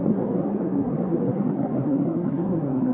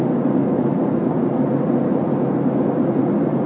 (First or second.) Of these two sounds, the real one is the second